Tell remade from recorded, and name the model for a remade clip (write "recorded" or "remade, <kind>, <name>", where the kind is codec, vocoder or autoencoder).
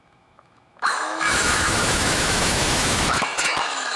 remade, autoencoder, DAC-VAE